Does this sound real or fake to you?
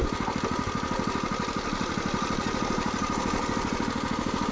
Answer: real